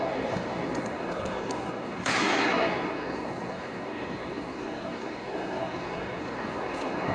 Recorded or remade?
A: remade